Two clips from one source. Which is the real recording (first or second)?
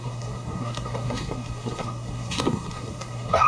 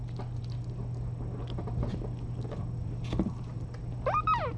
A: second